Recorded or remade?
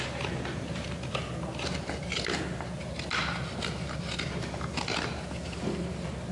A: recorded